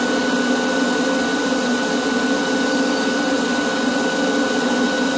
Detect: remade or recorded recorded